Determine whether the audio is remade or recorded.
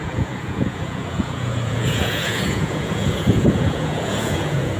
remade